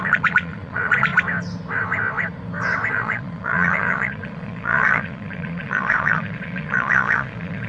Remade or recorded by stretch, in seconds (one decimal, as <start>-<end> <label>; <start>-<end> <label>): 0.0-1.1 remade; 1.1-2.9 recorded; 2.9-7.7 remade